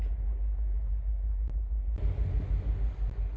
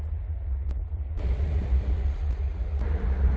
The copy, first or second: second